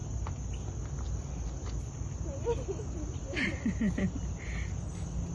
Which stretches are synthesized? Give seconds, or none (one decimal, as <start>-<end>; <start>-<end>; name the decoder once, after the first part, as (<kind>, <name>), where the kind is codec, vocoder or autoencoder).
none